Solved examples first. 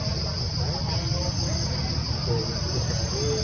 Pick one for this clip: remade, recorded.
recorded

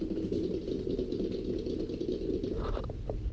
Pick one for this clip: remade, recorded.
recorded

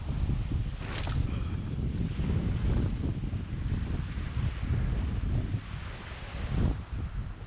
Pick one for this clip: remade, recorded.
recorded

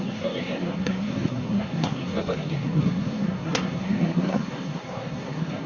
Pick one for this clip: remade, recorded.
remade